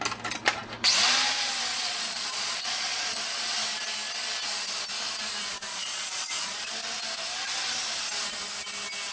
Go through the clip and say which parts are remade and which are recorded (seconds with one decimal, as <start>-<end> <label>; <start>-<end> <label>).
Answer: 0.0-1.7 recorded; 1.7-3.4 remade; 3.4-5.5 recorded; 5.5-6.7 remade; 6.7-9.1 recorded